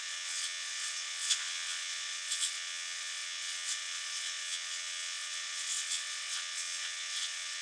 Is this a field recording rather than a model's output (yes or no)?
no